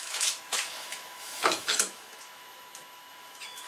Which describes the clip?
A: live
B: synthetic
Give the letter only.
B